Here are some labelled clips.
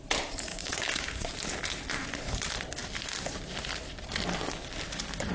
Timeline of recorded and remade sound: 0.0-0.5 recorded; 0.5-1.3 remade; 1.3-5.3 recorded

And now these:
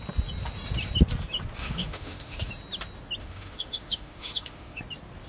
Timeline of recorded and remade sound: 0.0-1.6 recorded; 1.6-2.5 remade; 2.5-3.2 recorded; 3.2-4.8 remade; 4.8-5.3 recorded

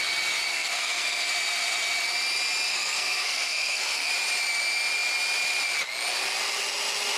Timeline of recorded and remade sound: 0.0-0.5 recorded; 0.5-1.3 remade; 1.3-2.7 recorded; 2.7-4.1 remade; 4.1-7.2 recorded

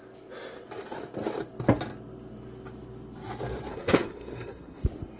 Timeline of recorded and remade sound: 0.0-3.7 recorded; 3.7-4.8 remade; 4.8-5.2 recorded